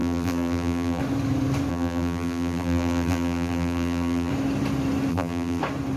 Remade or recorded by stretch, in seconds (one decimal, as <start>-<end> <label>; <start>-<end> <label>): 0.0-1.0 remade; 1.0-1.7 recorded; 1.7-4.3 remade; 4.3-5.1 recorded; 5.1-5.6 remade; 5.6-6.0 recorded